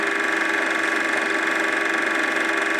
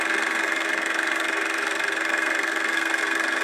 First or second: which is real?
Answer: first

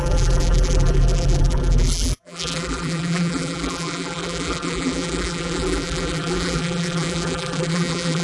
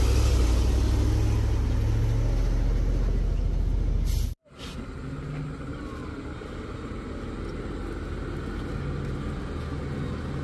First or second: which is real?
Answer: second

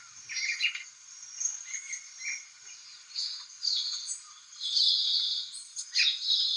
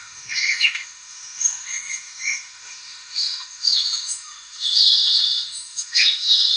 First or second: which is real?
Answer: first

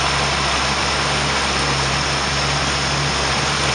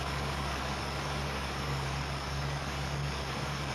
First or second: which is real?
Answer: first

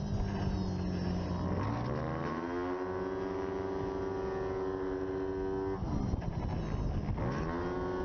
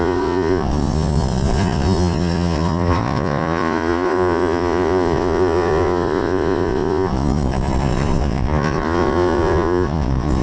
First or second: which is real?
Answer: first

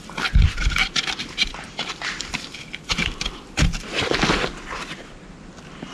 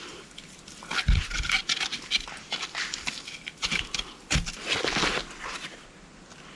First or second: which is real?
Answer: second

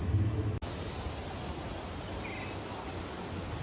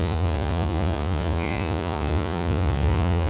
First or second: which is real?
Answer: first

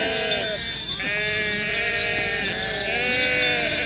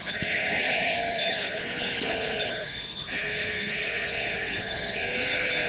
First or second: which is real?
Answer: first